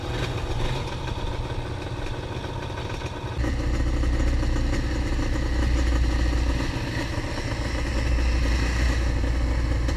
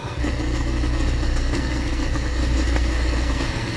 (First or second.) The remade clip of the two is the second